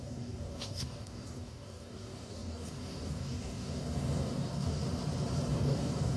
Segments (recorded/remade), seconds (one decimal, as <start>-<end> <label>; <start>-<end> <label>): 0.0-4.8 remade; 4.8-5.5 recorded; 5.5-6.2 remade